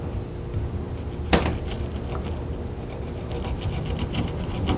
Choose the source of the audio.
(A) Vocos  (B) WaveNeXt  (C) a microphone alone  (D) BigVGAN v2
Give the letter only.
C